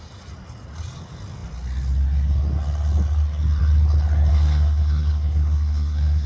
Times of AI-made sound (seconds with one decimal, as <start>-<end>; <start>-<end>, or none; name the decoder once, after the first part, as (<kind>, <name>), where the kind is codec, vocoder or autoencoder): 4.3-6.3 (codec, SNAC)